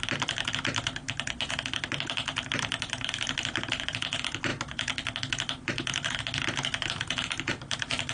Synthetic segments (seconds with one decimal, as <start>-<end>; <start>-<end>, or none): none